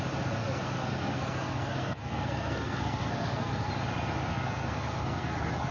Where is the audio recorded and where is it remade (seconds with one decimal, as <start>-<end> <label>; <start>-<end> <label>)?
0.0-0.4 recorded; 0.4-3.7 remade; 3.7-4.3 recorded; 4.3-5.7 remade